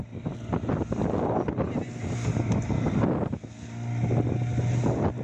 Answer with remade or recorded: recorded